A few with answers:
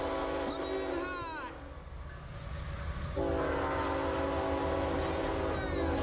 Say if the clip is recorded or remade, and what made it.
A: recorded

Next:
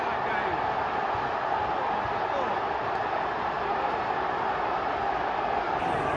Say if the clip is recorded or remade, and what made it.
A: recorded